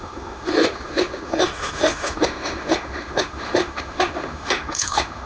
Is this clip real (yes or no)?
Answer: no